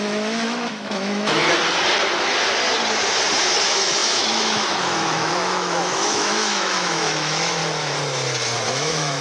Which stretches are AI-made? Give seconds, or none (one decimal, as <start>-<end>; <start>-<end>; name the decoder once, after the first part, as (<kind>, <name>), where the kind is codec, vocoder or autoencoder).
0.0-1.4 (autoencoder, DAC-VAE); 3.6-7.6; 8.7-9.2